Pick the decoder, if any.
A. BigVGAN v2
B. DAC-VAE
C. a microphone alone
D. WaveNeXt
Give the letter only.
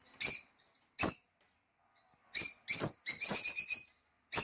C